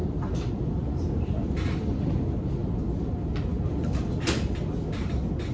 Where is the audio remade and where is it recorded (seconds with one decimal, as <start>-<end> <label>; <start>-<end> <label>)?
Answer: 0.0-5.5 recorded